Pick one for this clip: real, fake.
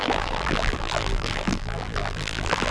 fake